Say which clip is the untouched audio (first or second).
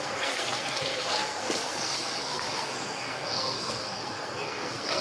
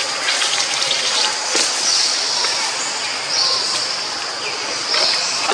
second